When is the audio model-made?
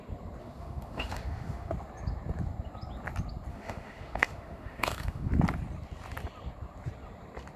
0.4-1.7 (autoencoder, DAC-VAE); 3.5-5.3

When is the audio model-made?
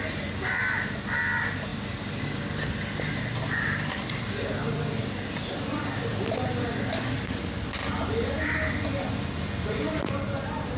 1.7-3.9 (vocoder, BigVGAN v2)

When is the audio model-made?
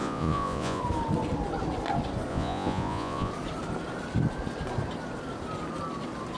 0.0-0.8 (vocoder, Vocos); 2.3-3.3